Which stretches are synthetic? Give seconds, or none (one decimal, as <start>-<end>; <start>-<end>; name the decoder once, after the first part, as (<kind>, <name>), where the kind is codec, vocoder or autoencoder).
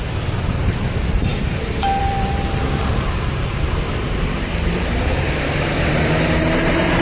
0.0-7.0 (vocoder, BigVGAN v2)